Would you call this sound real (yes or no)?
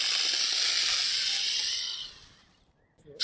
yes